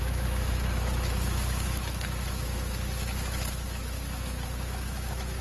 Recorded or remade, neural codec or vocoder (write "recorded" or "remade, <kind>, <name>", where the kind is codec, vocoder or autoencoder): remade, autoencoder, DAC-VAE